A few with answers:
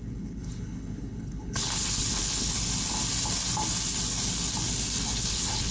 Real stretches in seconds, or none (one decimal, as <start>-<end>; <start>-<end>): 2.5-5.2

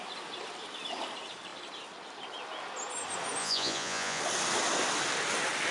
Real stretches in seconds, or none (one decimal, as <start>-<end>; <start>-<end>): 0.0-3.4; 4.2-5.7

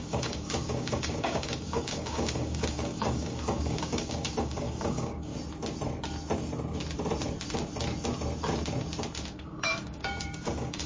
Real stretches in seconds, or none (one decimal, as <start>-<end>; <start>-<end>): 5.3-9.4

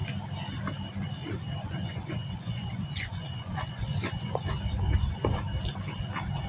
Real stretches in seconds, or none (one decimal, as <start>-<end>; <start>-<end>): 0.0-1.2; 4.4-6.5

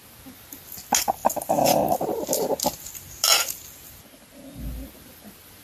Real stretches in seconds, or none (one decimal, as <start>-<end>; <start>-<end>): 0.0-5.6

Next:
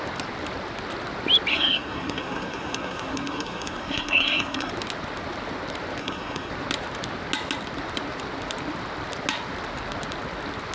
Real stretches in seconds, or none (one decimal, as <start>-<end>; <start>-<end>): 0.0-1.5; 4.7-6.0; 6.5-10.7

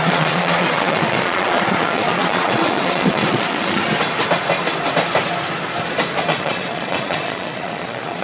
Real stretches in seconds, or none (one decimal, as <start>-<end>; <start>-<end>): 3.8-6.3

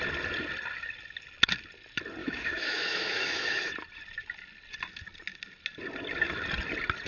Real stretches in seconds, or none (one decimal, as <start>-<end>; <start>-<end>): 0.0-2.2; 3.7-7.1